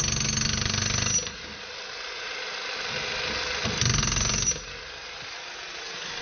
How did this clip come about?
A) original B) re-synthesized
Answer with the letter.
A